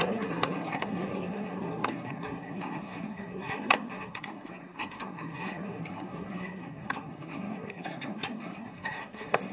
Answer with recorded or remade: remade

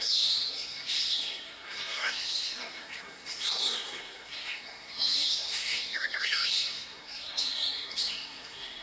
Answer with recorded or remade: remade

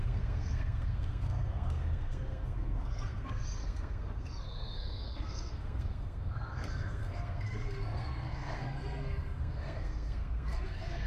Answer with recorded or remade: remade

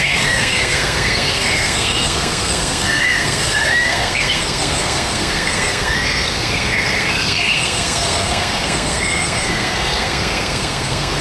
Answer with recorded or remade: remade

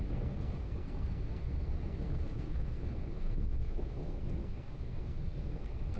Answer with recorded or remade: remade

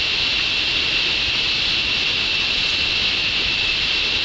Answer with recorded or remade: recorded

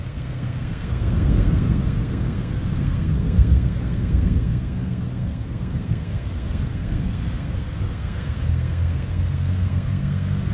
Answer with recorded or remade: remade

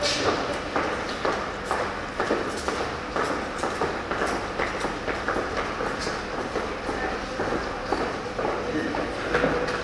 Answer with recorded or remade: recorded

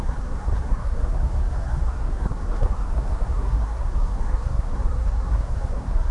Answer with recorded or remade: remade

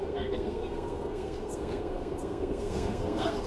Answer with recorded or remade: remade